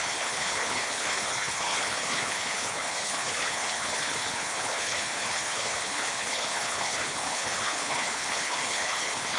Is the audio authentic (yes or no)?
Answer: no